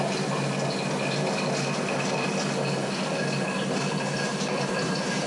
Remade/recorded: recorded